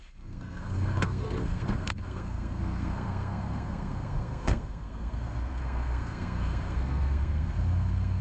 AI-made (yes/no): yes